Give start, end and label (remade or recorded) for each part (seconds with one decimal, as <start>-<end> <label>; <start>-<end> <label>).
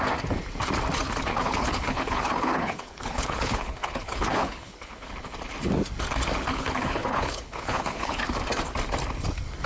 0.0-1.3 recorded; 1.3-5.1 remade; 5.1-6.5 recorded; 6.5-8.2 remade; 8.2-9.7 recorded